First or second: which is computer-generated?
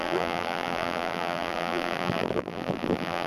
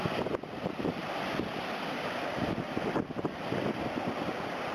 first